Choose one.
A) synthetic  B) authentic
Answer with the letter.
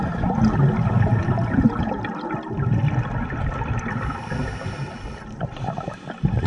B